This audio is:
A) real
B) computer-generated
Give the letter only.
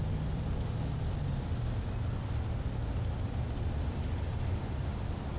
A